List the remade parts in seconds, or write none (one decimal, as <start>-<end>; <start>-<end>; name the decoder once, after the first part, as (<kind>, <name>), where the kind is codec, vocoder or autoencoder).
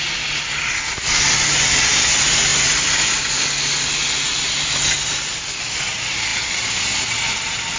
none